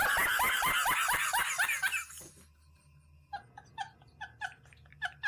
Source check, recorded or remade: recorded